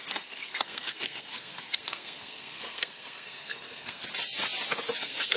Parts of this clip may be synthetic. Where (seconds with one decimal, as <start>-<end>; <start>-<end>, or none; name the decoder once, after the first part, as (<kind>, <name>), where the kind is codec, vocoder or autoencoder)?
0.0-4.0 (codec, SNAC); 5.0-5.4